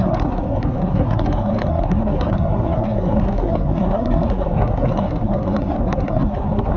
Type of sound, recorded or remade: remade